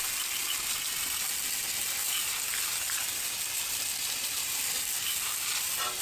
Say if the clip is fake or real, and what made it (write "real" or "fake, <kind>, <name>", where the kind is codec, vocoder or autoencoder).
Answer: real